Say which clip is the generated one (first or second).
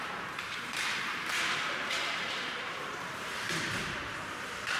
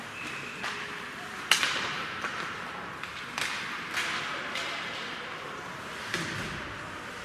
first